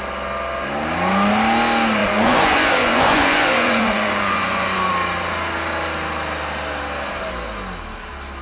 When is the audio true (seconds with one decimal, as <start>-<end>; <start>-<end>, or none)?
0.0-2.0; 4.9-8.4